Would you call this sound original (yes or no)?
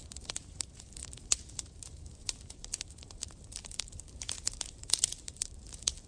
no